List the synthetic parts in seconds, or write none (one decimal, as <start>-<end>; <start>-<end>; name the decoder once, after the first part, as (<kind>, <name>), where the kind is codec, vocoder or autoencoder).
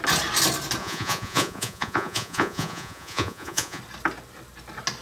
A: 0.8-3.8 (vocoder, Vocos)